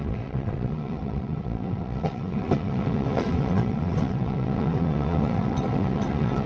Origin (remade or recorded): remade